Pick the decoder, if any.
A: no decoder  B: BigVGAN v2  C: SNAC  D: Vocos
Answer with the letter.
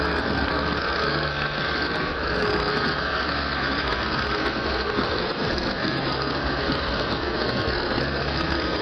C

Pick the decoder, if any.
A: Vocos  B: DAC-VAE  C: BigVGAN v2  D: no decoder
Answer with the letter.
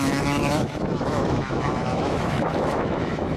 B